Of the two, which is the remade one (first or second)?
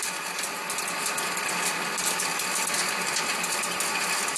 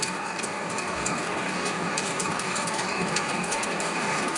second